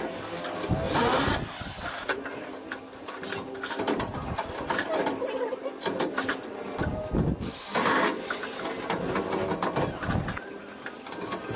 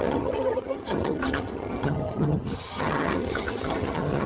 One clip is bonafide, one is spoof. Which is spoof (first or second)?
second